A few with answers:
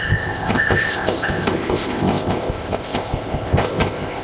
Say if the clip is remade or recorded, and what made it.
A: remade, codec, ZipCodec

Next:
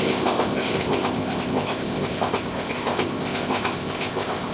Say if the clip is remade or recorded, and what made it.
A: remade, codec, ZipCodec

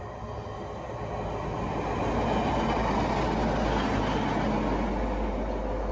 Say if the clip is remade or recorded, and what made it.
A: recorded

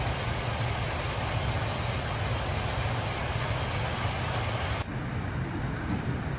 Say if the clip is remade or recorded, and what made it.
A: recorded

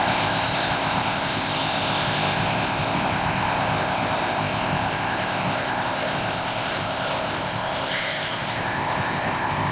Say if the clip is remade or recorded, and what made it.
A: remade, codec, ZipCodec